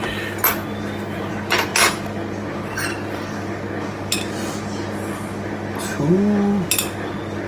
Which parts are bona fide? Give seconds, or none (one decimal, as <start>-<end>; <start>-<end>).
0.0-7.5